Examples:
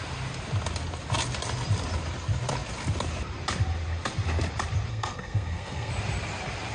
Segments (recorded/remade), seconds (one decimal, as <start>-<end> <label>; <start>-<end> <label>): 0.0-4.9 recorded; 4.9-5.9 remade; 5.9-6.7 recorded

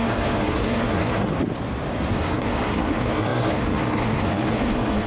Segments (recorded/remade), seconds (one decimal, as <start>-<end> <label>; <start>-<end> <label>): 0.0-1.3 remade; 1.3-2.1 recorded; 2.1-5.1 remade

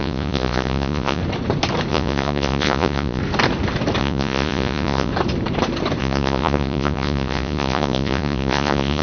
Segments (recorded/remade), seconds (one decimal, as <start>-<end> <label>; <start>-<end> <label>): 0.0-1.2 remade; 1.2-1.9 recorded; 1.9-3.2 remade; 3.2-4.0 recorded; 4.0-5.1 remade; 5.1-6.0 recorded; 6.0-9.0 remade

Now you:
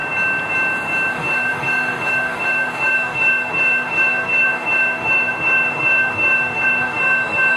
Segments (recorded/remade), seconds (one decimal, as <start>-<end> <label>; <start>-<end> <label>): 0.0-1.1 recorded; 1.1-7.6 remade